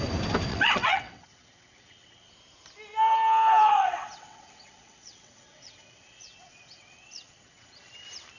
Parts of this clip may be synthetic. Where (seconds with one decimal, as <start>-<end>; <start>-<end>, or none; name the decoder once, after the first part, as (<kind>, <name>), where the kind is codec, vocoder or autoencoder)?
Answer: 0.5-2.3 (vocoder, WaveNeXt); 3.6-7.9